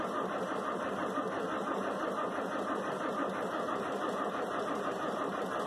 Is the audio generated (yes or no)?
no